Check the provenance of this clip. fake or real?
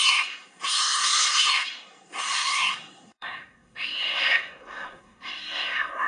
fake